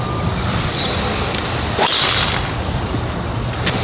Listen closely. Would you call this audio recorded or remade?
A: recorded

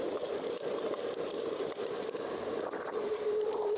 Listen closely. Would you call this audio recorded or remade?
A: remade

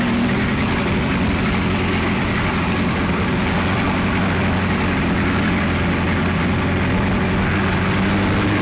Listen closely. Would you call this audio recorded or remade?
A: recorded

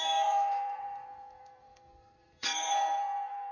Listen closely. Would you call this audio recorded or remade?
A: remade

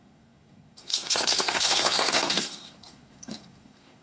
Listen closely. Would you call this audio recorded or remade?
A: remade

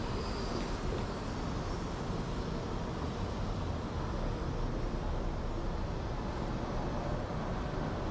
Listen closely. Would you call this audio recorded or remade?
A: recorded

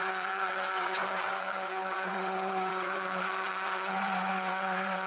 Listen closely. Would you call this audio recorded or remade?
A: remade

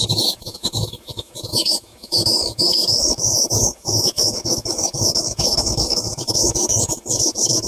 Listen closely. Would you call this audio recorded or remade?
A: remade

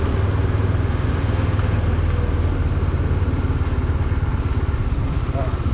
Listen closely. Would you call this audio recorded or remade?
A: recorded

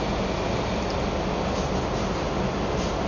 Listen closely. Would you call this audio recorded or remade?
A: recorded